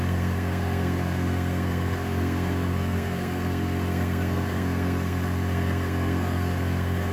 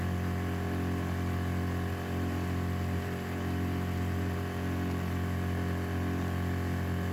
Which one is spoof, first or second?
first